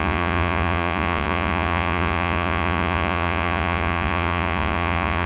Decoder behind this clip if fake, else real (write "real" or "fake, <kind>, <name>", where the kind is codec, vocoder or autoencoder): fake, vocoder, Vocos